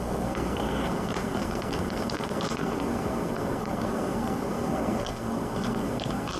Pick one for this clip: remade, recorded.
remade